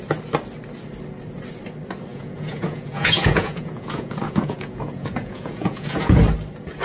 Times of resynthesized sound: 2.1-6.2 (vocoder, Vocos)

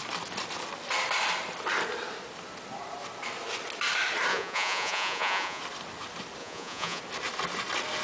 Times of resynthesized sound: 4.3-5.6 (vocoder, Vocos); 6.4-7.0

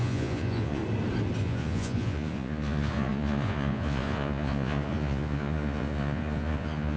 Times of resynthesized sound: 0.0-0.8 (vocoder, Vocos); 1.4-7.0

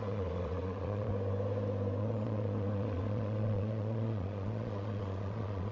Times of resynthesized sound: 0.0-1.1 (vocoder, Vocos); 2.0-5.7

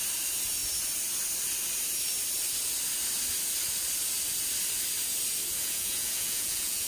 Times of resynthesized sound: 5.6-6.9 (vocoder, Vocos)

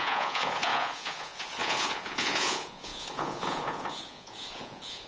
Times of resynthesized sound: 0.0-5.1 (vocoder, Vocos)

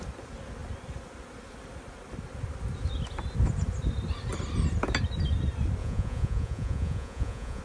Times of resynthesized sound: 5.8-7.6 (vocoder, Vocos)